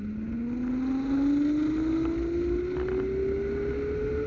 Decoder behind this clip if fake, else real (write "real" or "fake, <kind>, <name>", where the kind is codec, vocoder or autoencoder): real